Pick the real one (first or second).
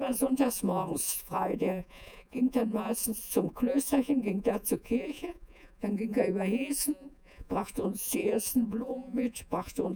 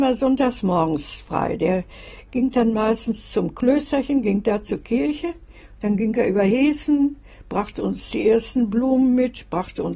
second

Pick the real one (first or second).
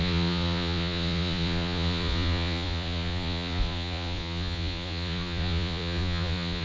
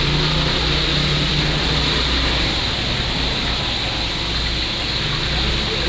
second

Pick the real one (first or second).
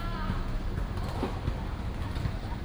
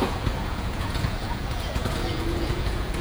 first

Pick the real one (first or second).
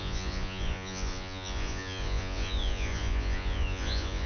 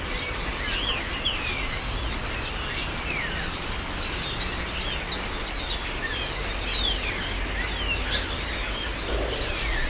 second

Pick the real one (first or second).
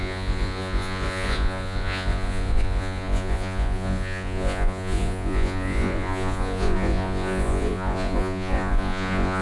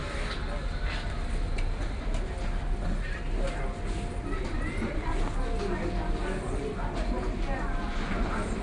second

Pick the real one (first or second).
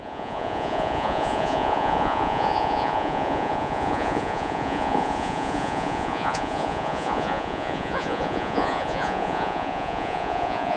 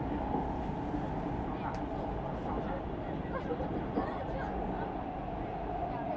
second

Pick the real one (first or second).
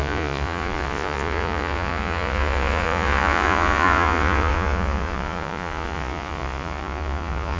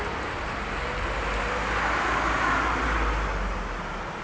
second